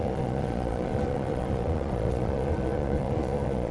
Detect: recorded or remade remade